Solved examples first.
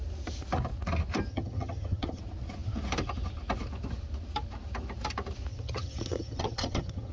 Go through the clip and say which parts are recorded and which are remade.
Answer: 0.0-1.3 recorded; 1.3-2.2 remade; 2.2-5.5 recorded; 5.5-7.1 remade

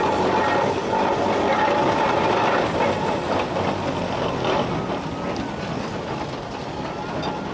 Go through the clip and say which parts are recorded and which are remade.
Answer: 0.0-7.5 recorded

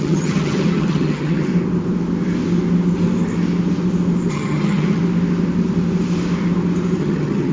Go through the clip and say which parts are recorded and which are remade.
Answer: 0.0-1.5 remade; 1.5-4.3 recorded; 4.3-5.0 remade; 5.0-7.0 recorded; 7.0-7.5 remade